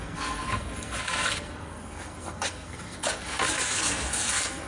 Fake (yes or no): yes